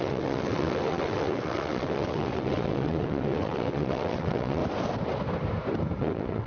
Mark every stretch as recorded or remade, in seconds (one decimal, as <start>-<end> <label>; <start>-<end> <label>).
0.0-4.6 remade; 4.6-6.0 recorded; 6.0-6.5 remade